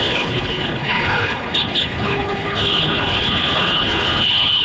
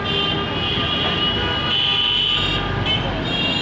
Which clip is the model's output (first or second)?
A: first